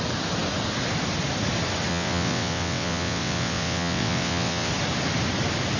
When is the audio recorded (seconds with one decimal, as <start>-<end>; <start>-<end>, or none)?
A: 0.0-1.9; 4.7-5.8